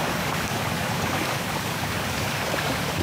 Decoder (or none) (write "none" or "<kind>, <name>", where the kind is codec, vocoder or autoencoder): codec, DAC